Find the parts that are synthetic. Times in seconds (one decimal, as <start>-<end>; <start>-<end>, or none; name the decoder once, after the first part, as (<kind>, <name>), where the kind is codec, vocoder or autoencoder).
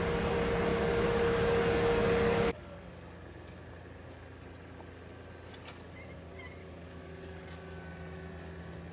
0.7-2.9 (codec, DAC); 6.6-7.4